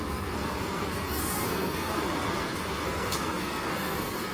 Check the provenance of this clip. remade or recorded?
remade